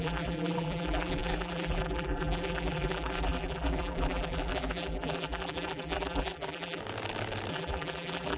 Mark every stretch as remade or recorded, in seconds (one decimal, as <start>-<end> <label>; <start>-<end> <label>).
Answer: 0.0-6.8 remade; 6.8-7.5 recorded; 7.5-8.4 remade